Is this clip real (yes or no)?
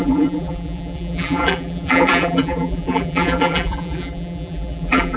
no